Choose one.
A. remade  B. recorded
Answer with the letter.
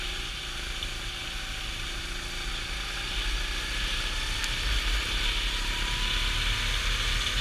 B